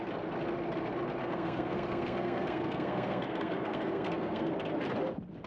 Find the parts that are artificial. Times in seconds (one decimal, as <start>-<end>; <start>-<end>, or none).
1.2-4.5